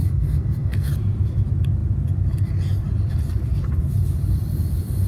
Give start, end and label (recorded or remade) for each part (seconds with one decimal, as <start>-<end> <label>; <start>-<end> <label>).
0.0-0.9 remade; 0.9-5.1 recorded